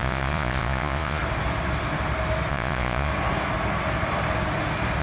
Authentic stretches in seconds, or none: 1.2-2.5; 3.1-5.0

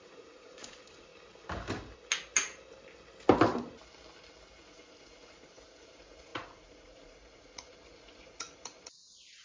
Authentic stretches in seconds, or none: 1.1-4.6

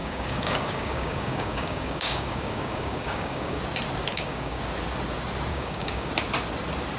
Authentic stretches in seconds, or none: 3.6-4.1; 4.6-5.5; 6.1-7.0

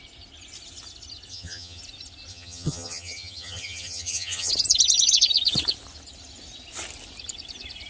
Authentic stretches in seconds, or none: 0.0-1.3; 1.8-2.3; 4.5-7.9

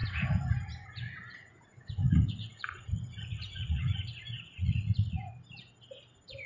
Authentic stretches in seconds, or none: 0.5-1.4; 5.3-6.5

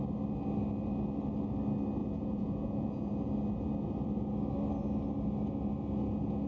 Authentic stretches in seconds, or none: 0.0-2.0; 3.3-6.5

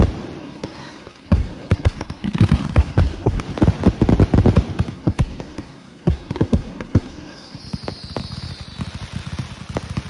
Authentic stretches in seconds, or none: 0.0-0.4; 3.4-4.9; 7.6-10.1